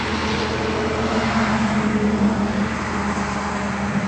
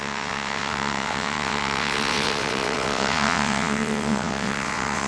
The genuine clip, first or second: first